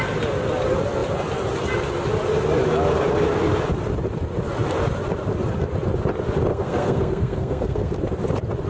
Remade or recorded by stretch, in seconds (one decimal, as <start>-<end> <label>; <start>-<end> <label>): 0.0-6.5 recorded; 6.5-7.9 remade; 7.9-8.7 recorded